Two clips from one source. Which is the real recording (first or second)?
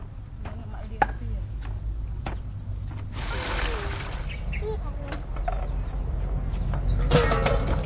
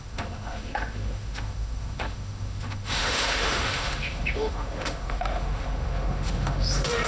first